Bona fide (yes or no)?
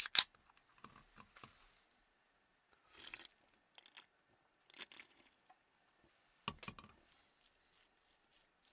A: yes